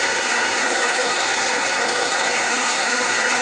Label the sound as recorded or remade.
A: remade